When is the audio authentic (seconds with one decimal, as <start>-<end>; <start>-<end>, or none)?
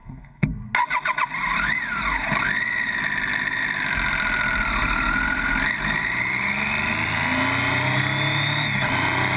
0.5-9.4